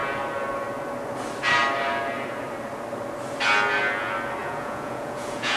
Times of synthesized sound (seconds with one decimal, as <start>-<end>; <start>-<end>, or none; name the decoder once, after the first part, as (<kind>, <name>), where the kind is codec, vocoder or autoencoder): 4.4-5.6 (vocoder, Vocos)